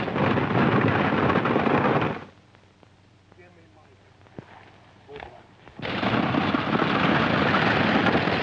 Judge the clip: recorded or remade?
recorded